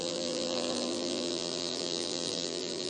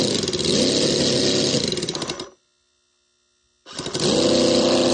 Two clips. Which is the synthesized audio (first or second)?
first